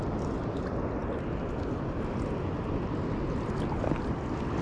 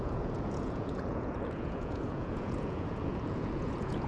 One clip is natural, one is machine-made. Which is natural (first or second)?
first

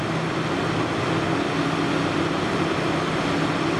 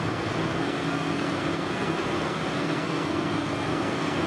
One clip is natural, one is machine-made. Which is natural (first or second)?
first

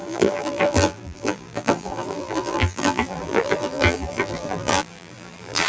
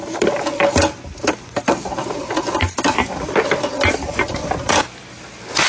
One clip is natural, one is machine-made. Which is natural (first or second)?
second